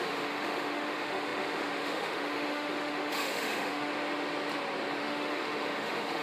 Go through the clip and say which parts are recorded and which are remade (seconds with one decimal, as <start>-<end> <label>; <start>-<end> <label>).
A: 0.0-3.9 remade; 3.9-5.0 recorded; 5.0-6.2 remade